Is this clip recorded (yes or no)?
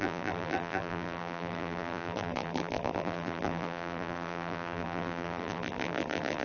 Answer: no